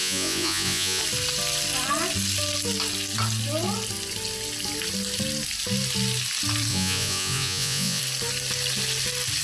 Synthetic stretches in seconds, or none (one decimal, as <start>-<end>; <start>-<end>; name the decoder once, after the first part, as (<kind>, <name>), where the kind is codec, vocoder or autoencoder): 0.0-1.0 (vocoder, Vocos); 6.7-8.0